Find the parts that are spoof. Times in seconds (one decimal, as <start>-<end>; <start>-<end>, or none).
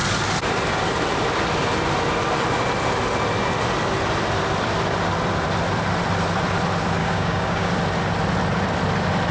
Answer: 7.0-7.7